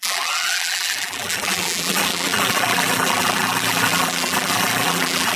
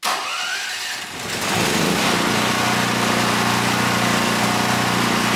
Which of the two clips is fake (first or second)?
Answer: first